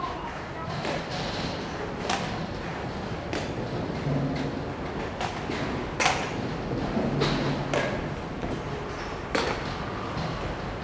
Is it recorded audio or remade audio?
recorded